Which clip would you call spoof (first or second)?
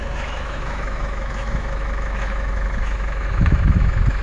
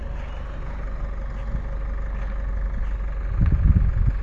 first